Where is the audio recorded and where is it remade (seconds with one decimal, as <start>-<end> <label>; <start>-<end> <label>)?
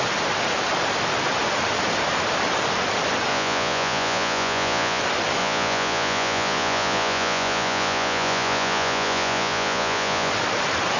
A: 0.0-3.3 recorded; 3.3-5.0 remade; 5.0-5.4 recorded; 5.4-10.3 remade; 10.3-11.0 recorded